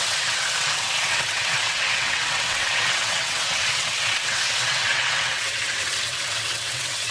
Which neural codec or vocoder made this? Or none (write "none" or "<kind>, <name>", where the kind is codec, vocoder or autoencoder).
vocoder, WaveNeXt